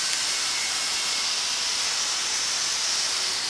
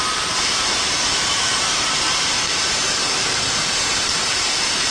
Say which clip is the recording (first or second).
first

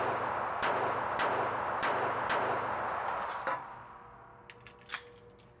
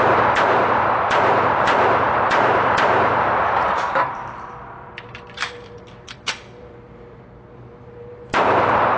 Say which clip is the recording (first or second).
first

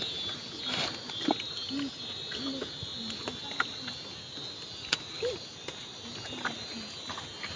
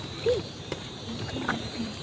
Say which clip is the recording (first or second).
first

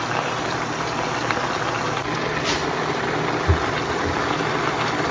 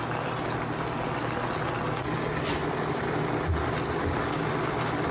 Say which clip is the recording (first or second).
second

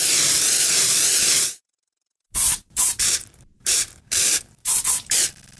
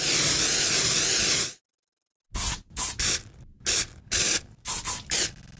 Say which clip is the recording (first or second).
second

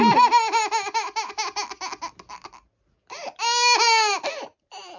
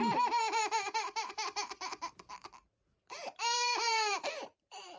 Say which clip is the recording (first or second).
first